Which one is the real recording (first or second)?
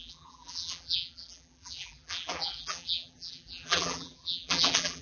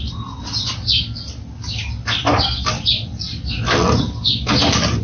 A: second